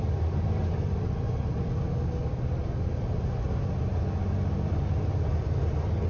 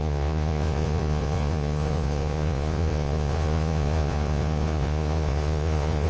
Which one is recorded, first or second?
first